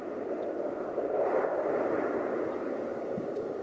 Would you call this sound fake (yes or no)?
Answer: no